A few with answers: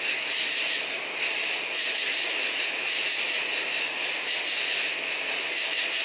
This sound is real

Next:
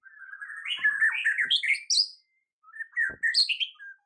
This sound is real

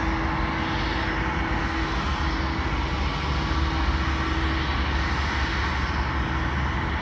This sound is real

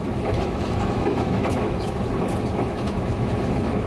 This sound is fake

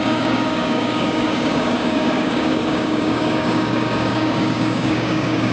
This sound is fake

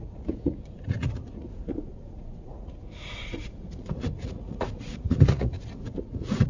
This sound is fake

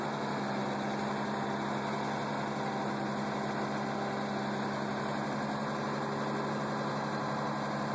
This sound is real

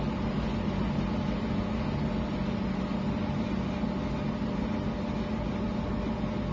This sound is real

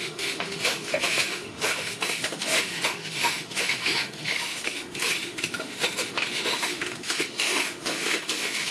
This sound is fake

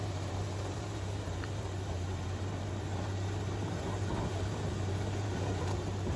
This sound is fake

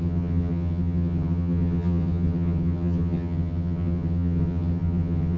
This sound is fake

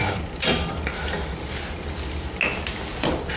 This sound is real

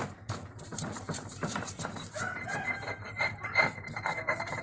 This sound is fake